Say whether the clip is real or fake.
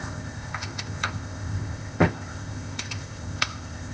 fake